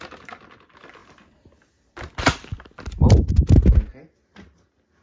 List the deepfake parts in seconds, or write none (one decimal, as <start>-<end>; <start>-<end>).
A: none